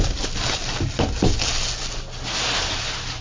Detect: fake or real real